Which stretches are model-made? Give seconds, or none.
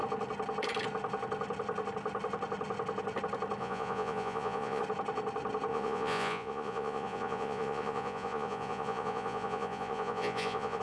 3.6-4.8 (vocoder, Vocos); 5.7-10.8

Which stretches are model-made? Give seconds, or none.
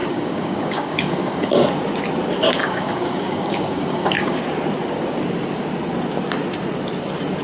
0.0-1.5 (codec, DAC); 2.6-4.4